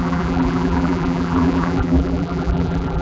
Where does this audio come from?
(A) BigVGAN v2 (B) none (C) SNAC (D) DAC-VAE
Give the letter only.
A